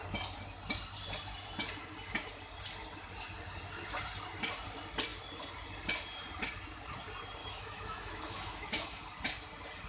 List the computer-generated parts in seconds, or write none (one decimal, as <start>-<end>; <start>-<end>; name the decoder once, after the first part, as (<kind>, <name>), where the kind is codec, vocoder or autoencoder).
7.4-9.0 (autoencoder, DAC-VAE)